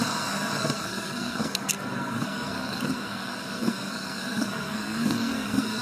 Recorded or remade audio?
remade